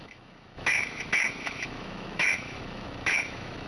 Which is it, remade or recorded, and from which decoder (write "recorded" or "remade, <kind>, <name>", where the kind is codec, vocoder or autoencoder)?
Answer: remade, autoencoder, DAC-VAE